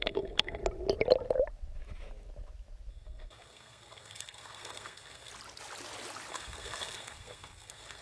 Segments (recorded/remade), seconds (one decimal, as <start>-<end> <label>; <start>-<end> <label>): 0.0-0.6 remade; 0.6-2.9 recorded; 2.9-5.3 remade; 5.3-6.3 recorded; 6.3-8.0 remade